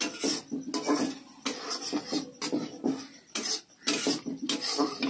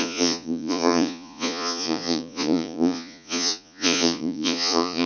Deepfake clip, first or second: second